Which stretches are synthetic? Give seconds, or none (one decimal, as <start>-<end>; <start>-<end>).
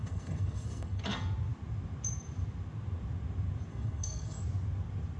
0.0-1.0; 3.7-4.4